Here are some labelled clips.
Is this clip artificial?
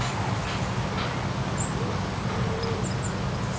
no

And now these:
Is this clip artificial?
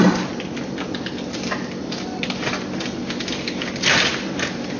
no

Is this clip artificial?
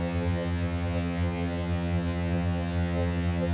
yes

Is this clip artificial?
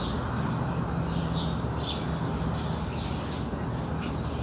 no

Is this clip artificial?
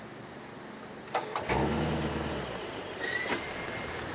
no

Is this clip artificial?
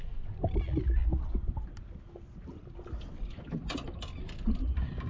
no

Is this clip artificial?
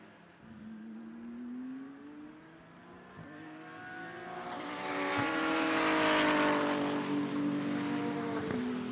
no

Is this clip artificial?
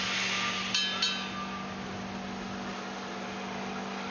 no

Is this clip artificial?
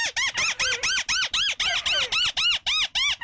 no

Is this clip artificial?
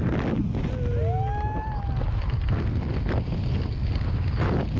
no